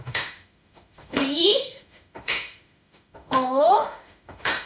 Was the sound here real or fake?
fake